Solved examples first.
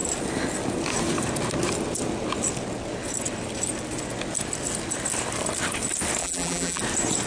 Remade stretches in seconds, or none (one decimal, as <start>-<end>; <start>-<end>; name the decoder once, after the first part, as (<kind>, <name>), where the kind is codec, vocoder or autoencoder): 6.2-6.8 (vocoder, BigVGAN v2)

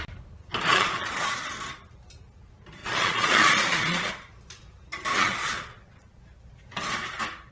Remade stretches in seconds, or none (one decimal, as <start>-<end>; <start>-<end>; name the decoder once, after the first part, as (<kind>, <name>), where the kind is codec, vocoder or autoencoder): 0.7-1.5 (vocoder, Vocos); 2.8-4.1; 5.1-6.2

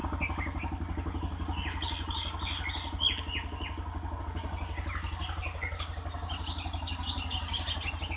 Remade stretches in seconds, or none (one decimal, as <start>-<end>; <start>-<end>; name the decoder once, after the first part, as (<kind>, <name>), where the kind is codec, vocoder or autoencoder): none

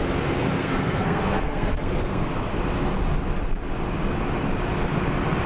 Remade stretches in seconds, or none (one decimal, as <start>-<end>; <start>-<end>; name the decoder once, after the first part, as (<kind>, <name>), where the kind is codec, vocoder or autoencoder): 0.6-2.5 (codec, SNAC)